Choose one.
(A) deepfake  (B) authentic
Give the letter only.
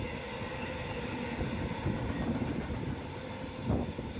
B